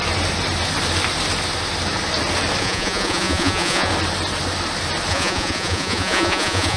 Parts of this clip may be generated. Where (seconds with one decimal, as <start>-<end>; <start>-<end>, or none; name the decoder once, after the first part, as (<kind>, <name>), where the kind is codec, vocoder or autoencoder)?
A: 2.6-3.9 (vocoder, Vocos); 5.1-6.8